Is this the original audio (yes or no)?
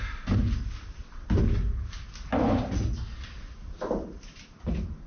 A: yes